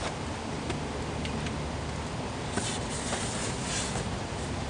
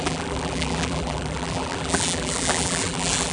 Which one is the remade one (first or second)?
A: second